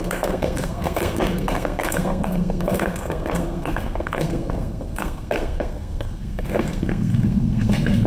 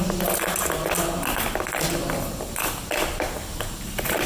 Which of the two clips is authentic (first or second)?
second